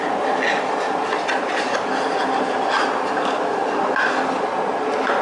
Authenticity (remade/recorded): recorded